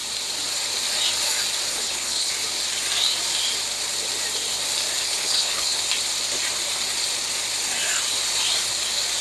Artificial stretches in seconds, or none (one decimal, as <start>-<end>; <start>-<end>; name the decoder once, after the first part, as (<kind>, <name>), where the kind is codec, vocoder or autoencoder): 1.7-2.3 (codec, HILCodec); 5.0-5.8